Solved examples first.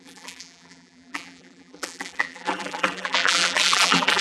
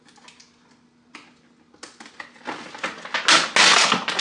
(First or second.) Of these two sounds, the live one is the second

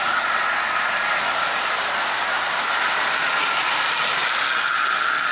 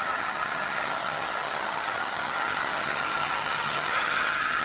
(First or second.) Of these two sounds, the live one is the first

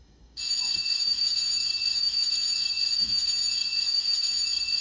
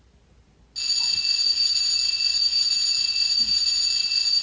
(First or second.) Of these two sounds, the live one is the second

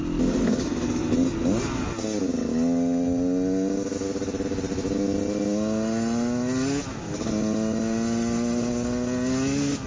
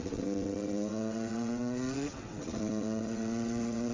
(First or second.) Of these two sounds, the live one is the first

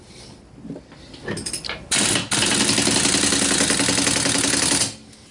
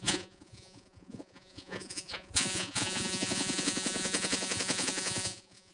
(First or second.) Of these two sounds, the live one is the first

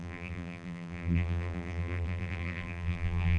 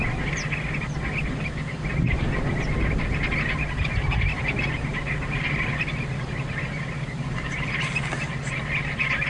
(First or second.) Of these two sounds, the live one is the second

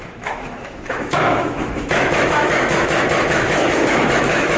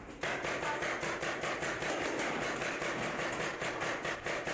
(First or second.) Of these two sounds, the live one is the second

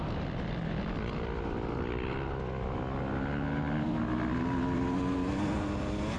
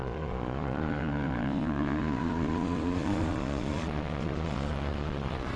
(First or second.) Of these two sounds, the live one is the first